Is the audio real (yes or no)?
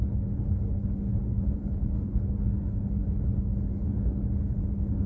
no